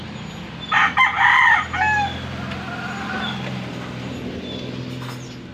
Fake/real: real